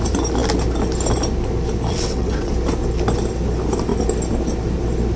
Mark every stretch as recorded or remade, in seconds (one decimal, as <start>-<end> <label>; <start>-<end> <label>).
0.0-1.9 recorded; 1.9-2.5 remade; 2.5-5.2 recorded